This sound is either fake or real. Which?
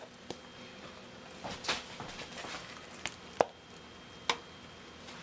real